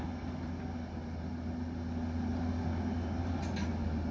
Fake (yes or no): no